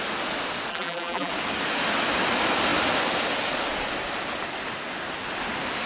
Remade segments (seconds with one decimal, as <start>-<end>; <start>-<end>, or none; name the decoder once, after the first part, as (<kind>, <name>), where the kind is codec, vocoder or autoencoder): 0.7-1.3 (vocoder, BigVGAN v2)